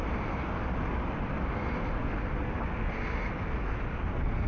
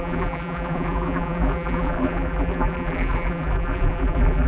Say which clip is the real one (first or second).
first